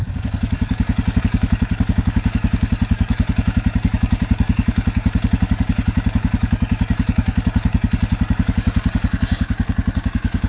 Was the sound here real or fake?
fake